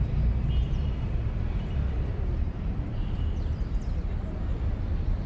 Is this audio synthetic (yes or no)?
no